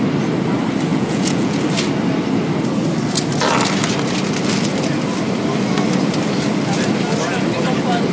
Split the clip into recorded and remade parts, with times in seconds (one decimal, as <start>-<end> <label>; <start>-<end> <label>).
0.0-0.9 recorded; 0.9-1.6 remade; 1.6-8.1 recorded